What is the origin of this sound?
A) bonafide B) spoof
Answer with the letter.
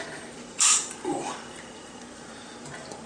B